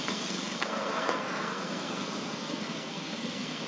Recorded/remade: remade